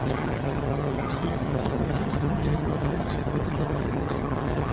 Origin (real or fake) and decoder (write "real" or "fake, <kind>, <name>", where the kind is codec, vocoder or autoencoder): fake, vocoder, HiFi-GAN